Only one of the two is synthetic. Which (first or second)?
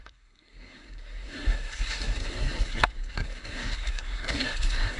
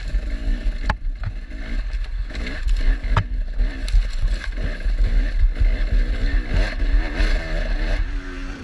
first